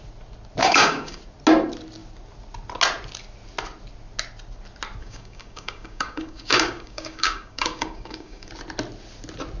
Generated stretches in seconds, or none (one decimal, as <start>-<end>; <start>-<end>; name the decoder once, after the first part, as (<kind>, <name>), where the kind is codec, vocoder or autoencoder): 0.6-1.2 (codec, DAC); 5.0-8.5